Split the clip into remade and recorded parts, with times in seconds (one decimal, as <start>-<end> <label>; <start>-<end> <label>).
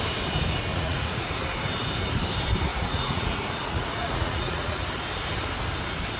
0.0-0.7 recorded; 0.7-1.3 remade; 1.3-2.7 recorded; 2.7-4.8 remade; 4.8-6.2 recorded